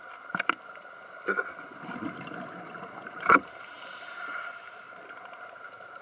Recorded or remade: recorded